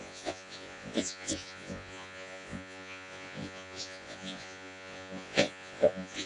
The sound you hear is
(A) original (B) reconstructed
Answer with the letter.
B